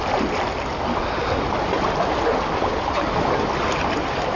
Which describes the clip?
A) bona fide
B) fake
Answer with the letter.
A